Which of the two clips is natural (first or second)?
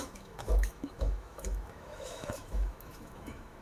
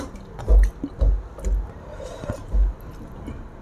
second